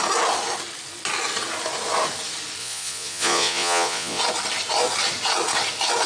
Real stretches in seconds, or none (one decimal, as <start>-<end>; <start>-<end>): 0.0-2.6; 4.2-6.1